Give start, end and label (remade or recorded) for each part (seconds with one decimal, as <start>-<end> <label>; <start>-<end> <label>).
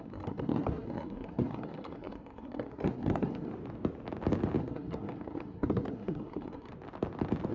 0.0-3.5 remade; 3.5-4.6 recorded; 4.6-6.7 remade; 6.7-7.5 recorded